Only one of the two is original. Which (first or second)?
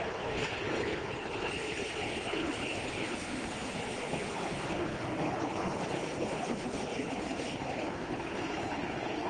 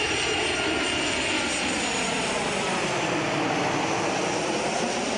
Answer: second